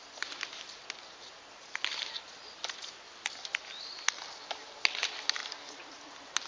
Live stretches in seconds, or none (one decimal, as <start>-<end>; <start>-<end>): 0.0-6.5